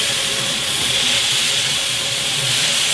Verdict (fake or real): fake